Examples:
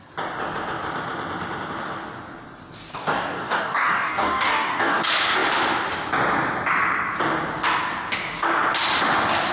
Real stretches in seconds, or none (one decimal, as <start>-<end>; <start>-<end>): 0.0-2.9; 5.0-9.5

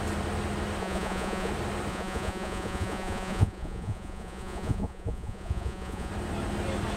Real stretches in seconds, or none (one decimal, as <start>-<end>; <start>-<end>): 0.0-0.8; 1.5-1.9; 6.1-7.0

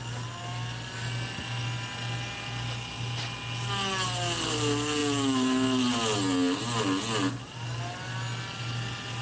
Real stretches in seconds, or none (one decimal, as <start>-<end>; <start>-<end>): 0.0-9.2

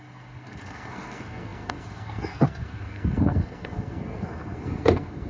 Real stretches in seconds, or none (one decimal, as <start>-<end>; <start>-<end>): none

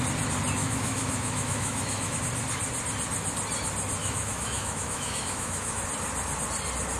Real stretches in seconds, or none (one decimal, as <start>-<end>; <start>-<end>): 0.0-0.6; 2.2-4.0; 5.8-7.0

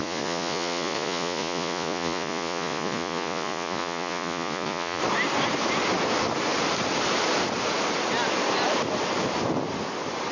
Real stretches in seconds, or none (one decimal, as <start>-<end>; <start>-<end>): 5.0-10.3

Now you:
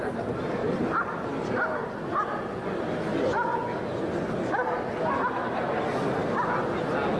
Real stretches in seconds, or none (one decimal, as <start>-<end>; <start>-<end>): 0.0-0.6; 1.9-7.2